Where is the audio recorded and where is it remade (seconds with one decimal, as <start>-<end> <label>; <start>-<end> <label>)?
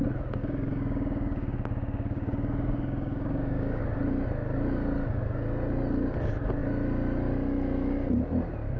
0.0-0.4 recorded; 0.4-3.8 remade; 3.8-8.8 recorded